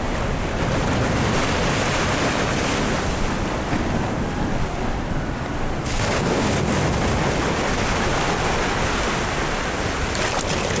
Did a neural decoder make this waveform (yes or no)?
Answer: no